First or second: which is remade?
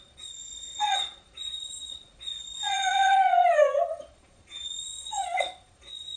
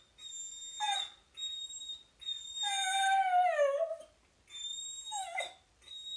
first